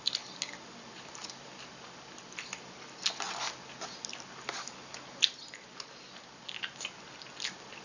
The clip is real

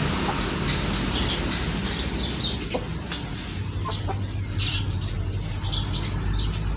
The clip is real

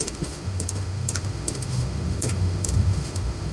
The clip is fake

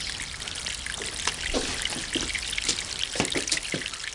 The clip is real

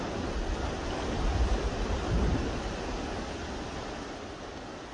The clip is real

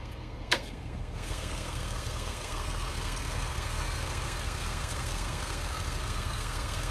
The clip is fake